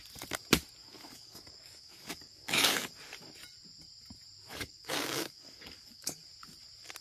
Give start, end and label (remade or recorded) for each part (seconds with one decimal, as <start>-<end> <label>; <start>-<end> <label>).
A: 0.0-0.8 recorded; 0.8-2.9 remade; 2.9-4.5 recorded; 4.5-6.2 remade; 6.2-7.0 recorded